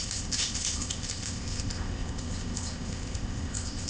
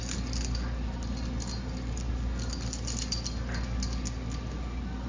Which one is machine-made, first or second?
first